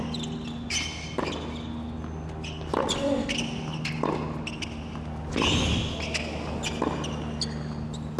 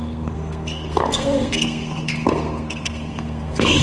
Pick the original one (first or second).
first